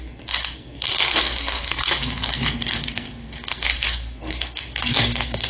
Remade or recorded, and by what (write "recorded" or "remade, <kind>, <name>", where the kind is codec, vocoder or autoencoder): remade, codec, SNAC